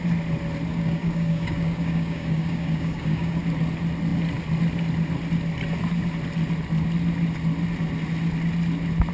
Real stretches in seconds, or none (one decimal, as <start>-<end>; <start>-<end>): 0.0-0.7; 3.4-9.1